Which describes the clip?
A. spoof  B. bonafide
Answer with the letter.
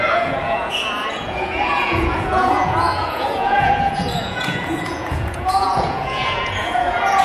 A